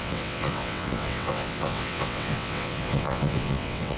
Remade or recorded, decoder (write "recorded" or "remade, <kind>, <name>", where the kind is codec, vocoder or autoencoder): remade, vocoder, WaveNeXt